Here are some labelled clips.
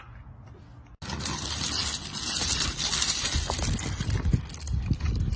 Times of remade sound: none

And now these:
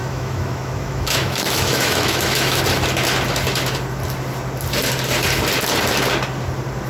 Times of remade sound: 0.0-2.6 (autoencoder, DAC-VAE)